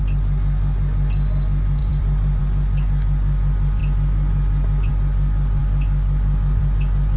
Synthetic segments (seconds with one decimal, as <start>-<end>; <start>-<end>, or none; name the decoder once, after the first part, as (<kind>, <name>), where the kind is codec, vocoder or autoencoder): 1.8-2.4 (vocoder, BigVGAN v2)